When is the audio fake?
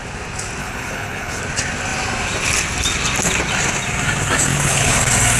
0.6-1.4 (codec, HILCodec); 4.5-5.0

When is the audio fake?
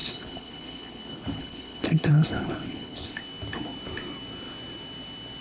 0.0-3.2 (codec, HILCodec)